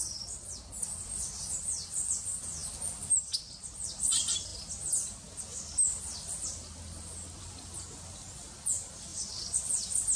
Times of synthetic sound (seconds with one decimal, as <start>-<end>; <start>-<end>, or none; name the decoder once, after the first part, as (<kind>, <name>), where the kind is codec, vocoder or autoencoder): none